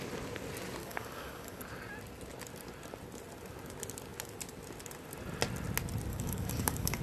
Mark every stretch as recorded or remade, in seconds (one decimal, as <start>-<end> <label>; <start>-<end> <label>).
0.0-0.8 recorded; 0.8-1.6 remade; 1.6-6.1 recorded; 6.1-7.0 remade